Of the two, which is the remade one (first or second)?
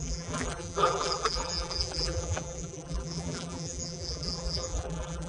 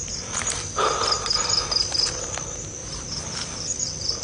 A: first